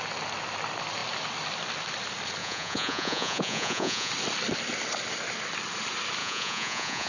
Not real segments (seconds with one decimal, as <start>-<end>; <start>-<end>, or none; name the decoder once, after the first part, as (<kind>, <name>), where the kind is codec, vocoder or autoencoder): 2.4-4.1 (vocoder, Vocos); 6.2-7.1